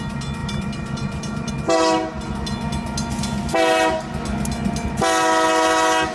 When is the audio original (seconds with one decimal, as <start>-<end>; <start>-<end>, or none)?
0.0-0.4; 1.5-6.1